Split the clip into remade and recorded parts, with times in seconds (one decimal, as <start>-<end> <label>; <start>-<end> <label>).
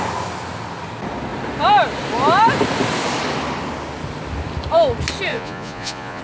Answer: 0.0-5.3 recorded; 5.3-6.2 remade